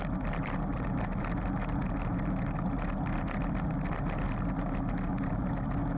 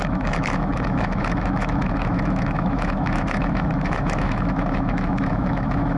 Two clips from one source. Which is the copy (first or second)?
second